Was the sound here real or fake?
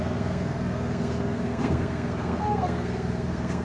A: fake